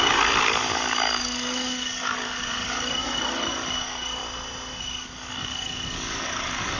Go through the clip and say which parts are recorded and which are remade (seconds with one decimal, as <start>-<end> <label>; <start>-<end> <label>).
0.0-4.2 remade; 4.2-4.8 recorded; 4.8-6.8 remade